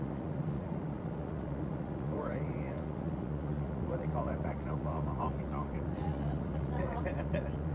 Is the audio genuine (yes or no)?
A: no